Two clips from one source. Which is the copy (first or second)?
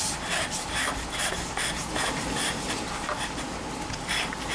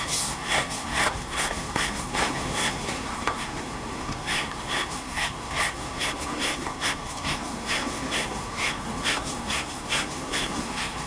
second